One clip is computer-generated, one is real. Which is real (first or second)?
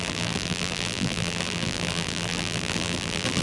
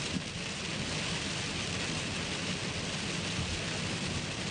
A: second